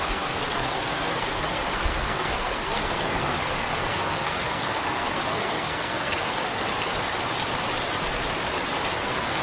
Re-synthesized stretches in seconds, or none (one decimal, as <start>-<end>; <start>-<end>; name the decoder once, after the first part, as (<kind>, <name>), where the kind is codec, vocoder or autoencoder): 0.0-6.7 (codec, SNAC); 9.0-9.4